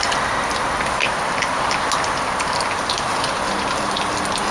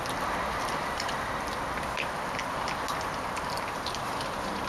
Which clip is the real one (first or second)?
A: first